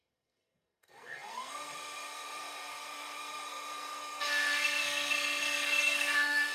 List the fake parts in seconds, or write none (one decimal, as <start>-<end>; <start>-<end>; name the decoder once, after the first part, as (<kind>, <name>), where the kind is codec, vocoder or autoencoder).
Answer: 0.0-6.5 (codec, SNAC)